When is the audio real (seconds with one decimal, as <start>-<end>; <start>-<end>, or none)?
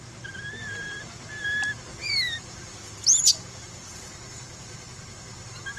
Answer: 0.0-2.0